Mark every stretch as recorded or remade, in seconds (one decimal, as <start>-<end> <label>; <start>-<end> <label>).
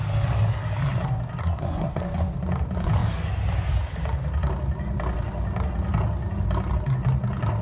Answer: 0.0-1.4 recorded; 1.4-2.0 remade; 2.0-7.6 recorded